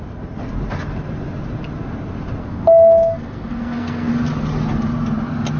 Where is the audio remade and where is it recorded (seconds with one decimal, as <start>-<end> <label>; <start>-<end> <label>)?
0.0-2.4 recorded; 2.4-4.1 remade; 4.1-5.6 recorded